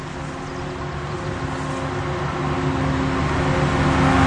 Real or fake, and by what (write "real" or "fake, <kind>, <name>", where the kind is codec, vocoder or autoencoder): real